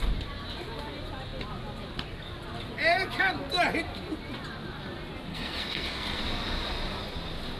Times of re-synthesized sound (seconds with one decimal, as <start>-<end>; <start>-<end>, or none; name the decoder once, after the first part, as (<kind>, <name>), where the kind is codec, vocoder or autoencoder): 5.3-6.2 (codec, SNAC)